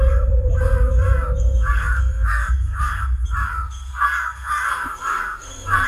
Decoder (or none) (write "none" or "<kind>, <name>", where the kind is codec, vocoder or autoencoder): codec, SNAC